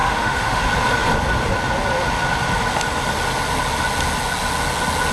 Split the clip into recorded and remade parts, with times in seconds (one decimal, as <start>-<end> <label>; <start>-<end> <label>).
0.0-0.6 remade; 0.6-5.1 recorded

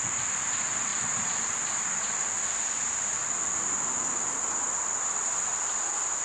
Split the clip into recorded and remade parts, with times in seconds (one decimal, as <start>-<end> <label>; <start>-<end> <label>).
0.0-6.2 recorded

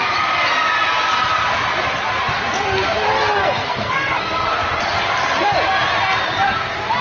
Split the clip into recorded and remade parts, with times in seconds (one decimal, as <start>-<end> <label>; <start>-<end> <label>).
0.0-3.4 recorded; 3.4-4.5 remade; 4.5-7.0 recorded

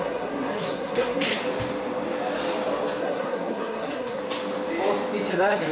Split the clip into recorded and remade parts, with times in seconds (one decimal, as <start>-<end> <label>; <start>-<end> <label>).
0.0-1.4 remade; 1.4-3.0 recorded; 3.0-4.2 remade; 4.2-5.3 recorded; 5.3-5.7 remade

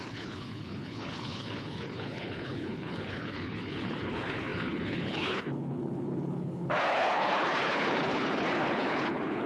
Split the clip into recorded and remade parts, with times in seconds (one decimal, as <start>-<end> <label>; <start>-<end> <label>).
0.0-9.5 remade

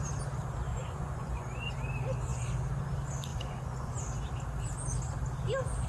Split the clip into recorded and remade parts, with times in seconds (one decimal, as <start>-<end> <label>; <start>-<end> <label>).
0.0-0.7 recorded; 0.7-1.7 remade; 1.7-3.3 recorded; 3.3-4.0 remade; 4.0-5.9 recorded

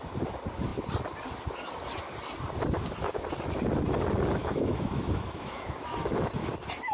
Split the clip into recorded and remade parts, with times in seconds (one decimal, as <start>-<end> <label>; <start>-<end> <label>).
0.0-4.4 recorded; 4.4-6.5 remade; 6.5-6.9 recorded